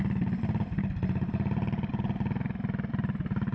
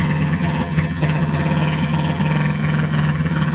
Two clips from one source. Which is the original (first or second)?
first